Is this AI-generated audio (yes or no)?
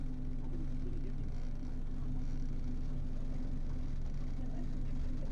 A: no